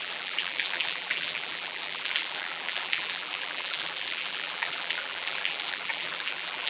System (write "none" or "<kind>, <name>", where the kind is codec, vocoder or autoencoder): vocoder, BigVGAN v2